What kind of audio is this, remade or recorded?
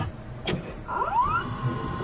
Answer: remade